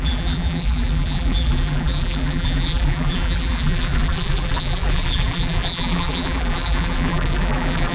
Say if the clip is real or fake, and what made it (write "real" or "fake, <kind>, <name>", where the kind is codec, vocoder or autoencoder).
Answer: fake, vocoder, BigVGAN v2